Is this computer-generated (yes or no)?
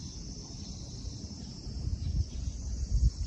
no